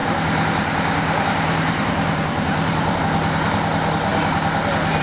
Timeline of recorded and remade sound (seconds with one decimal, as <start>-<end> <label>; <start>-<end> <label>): 0.0-3.0 remade; 3.0-5.0 recorded